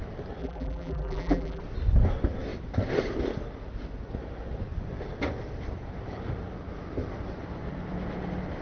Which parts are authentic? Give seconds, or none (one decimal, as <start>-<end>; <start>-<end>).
0.0-0.4; 1.6-8.6